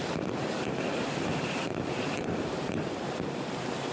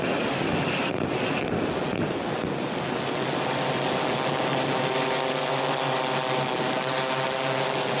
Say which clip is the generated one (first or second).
first